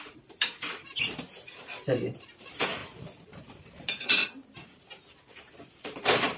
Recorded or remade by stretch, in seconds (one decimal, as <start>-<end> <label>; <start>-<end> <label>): 0.0-4.2 remade; 4.2-5.1 recorded; 5.1-6.4 remade